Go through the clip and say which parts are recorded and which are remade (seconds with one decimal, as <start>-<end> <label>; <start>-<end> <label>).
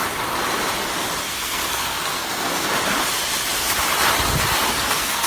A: 0.0-1.3 recorded; 1.3-2.7 remade; 2.7-4.7 recorded; 4.7-5.3 remade